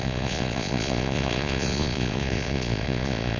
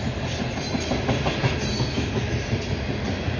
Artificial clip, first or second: first